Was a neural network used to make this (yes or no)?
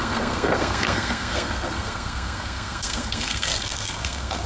yes